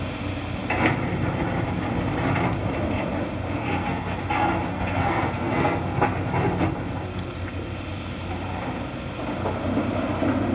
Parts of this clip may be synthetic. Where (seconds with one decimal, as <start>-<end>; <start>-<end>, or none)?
3.6-4.2; 4.7-5.8